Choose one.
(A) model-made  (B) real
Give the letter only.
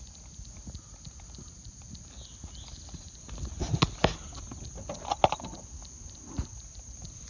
B